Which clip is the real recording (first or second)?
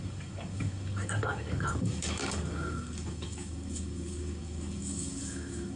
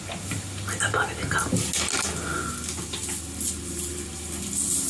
second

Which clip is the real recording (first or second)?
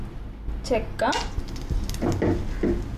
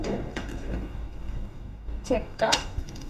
first